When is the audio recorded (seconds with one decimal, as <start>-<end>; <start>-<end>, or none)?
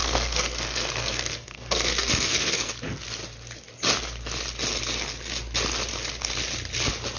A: 2.7-7.2